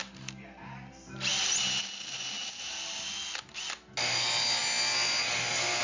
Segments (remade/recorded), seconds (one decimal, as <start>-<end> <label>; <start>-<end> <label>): 0.0-5.8 recorded